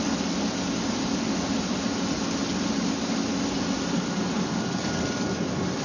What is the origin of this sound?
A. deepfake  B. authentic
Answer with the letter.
B